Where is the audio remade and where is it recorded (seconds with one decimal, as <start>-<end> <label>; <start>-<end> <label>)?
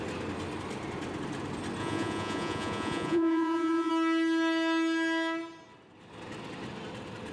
0.0-1.8 recorded; 1.8-3.9 remade; 3.9-7.3 recorded